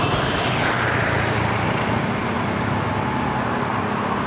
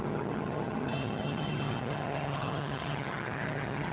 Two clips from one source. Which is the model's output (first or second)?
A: second